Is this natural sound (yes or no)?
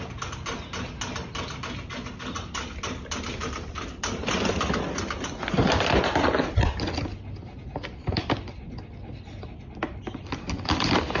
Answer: yes